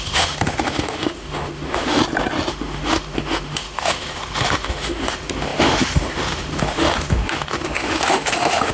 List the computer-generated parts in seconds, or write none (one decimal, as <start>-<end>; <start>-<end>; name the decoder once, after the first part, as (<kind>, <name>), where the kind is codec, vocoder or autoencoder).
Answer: 0.0-2.0 (autoencoder, DAC-VAE); 2.5-8.7